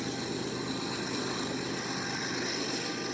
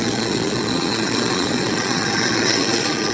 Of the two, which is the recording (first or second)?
first